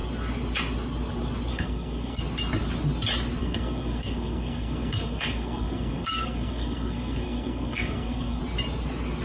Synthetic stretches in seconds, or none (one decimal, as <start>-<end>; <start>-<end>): 1.5-2.2; 3.4-8.4